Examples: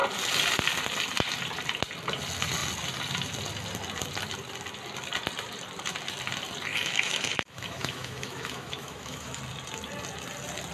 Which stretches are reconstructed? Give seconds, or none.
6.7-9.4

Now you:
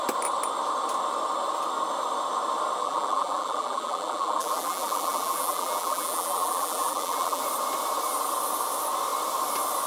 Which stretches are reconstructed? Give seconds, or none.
2.8-7.4

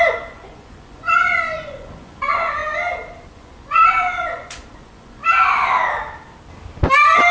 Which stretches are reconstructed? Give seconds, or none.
0.0-2.6; 3.3-5.2